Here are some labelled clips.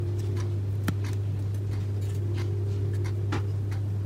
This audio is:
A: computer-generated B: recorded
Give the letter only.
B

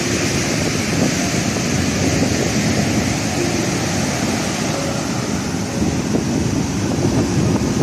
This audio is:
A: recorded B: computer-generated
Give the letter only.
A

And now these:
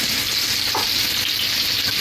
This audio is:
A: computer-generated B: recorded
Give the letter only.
B